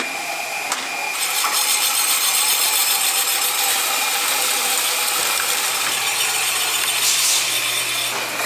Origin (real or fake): real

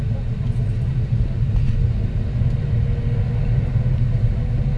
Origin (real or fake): real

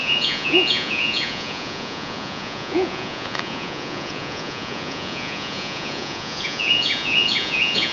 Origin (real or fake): fake